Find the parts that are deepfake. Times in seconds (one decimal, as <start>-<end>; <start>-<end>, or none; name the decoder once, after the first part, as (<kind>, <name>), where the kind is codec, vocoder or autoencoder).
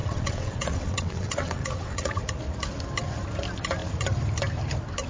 0.0-2.2 (vocoder, WaveNeXt)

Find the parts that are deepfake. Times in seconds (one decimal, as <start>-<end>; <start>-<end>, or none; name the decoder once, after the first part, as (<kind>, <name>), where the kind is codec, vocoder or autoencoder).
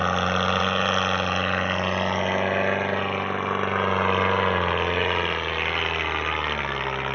none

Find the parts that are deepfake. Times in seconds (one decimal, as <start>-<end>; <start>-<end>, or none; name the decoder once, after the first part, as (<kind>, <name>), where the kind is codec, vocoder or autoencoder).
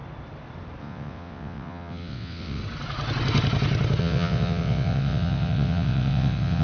0.8-2.6 (vocoder, WaveNeXt); 4.0-6.6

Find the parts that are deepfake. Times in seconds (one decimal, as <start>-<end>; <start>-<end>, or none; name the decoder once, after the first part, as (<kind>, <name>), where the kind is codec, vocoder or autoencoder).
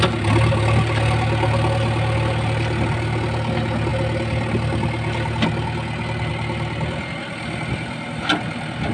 none